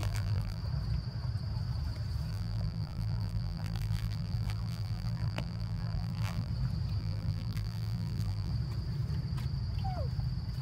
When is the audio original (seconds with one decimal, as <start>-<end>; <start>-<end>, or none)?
0.6-2.3; 6.5-7.0; 8.5-10.6